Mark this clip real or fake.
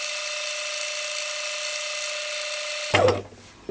real